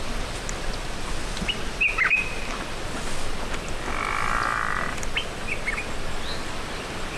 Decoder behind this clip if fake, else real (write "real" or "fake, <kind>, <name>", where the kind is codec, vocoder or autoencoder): real